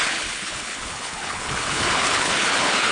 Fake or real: fake